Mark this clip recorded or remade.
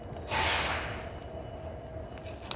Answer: recorded